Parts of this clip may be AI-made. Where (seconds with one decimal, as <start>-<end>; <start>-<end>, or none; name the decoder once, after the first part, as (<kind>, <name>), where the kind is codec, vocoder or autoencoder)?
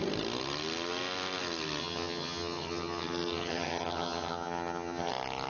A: 1.8-5.1 (vocoder, HiFi-GAN)